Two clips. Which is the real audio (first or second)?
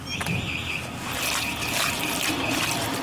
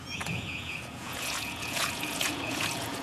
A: first